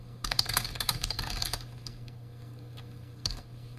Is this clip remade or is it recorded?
remade